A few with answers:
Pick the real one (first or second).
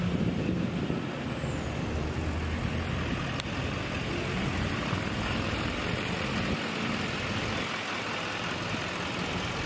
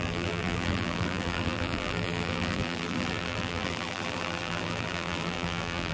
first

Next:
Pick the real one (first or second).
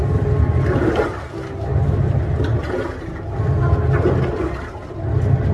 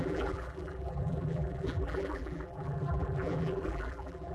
first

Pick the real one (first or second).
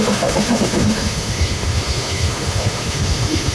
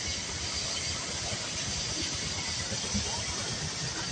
second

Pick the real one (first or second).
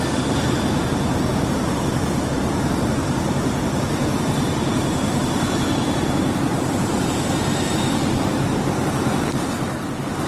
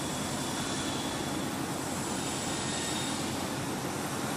second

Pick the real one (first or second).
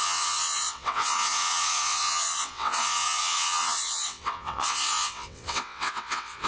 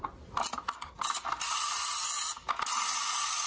second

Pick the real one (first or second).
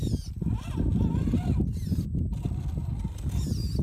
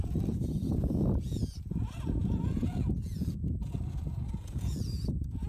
first